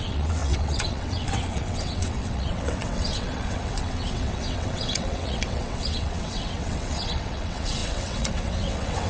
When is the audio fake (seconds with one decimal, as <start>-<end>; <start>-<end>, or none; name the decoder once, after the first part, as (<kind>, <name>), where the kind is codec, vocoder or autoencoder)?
0.0-9.1 (vocoder, WaveNeXt)

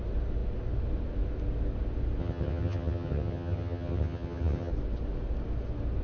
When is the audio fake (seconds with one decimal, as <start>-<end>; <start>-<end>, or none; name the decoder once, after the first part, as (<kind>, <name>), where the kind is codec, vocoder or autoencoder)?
2.2-4.7 (vocoder, HiFi-GAN)

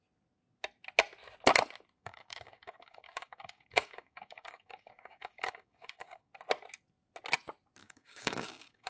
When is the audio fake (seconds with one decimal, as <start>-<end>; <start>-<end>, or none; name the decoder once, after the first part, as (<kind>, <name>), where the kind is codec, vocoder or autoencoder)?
2.0-6.3 (codec, DAC); 7.8-8.9

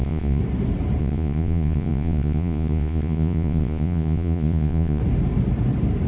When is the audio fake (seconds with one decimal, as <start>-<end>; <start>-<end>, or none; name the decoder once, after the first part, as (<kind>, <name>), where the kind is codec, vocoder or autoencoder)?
0.0-0.4 (vocoder, Vocos); 1.0-5.0